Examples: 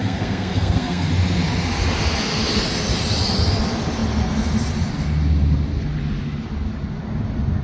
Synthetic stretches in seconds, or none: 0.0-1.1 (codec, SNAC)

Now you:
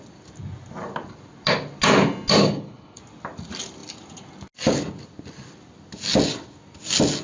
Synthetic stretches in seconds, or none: 2.4-3.0 (codec, HILCodec)

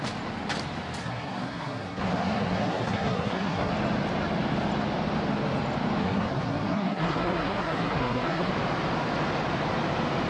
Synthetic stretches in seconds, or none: 1.0-3.7 (codec, SNAC); 6.0-8.5

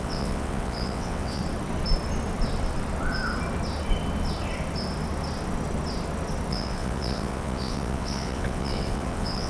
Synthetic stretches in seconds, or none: 0.0-1.4 (vocoder, WaveNeXt); 6.5-9.5

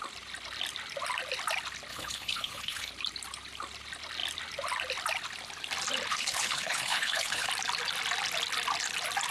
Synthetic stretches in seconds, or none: 1.9-2.9 (codec, HILCodec); 6.1-7.5

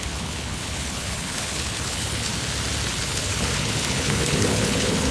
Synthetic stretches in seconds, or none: 0.0-2.3 (codec, HILCodec); 3.0-5.1

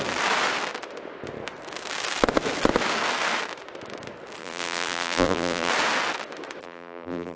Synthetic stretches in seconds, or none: 4.4-5.7 (vocoder, BigVGAN v2); 6.6-7.4

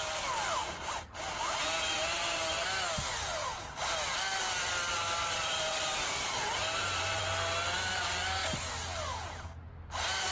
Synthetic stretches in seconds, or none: 0.6-1.1 (vocoder, BigVGAN v2); 4.9-7.2